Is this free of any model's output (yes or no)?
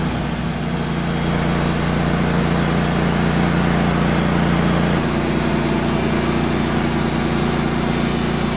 yes